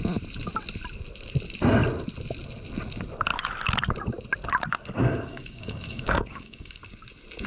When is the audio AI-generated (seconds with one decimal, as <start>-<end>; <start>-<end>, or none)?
5.0-6.8